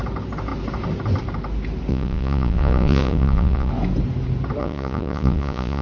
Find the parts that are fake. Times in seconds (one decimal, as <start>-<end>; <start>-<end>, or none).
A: 1.9-3.7; 4.6-5.8